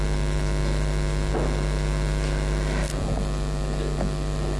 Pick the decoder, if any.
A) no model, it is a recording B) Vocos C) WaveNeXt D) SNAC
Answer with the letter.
A